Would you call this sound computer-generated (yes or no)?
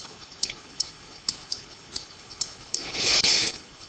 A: yes